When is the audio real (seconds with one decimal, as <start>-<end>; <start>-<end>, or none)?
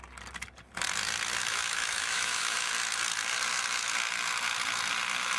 0.0-1.4; 2.7-5.4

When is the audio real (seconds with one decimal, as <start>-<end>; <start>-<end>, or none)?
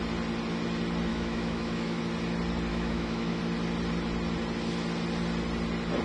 0.0-1.1; 2.0-2.7; 3.4-6.0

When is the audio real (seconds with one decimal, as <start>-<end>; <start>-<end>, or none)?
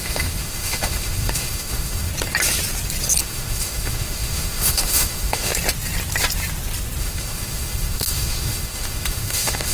2.1-3.2; 5.5-7.0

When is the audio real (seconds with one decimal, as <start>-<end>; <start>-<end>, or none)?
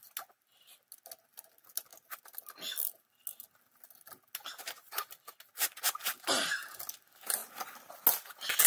0.0-8.7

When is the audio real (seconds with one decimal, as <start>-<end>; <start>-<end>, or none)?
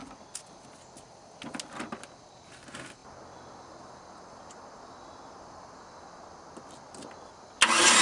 0.0-8.0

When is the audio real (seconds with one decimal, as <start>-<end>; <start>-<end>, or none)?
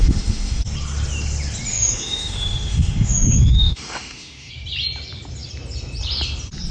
0.6-1.7; 4.5-6.7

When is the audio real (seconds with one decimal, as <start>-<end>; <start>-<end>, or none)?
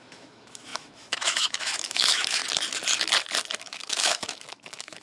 2.4-3.6